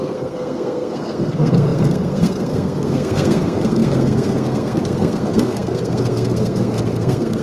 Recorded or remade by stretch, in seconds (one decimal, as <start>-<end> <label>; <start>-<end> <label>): 0.0-7.4 remade